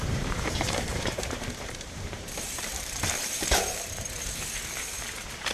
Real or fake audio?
fake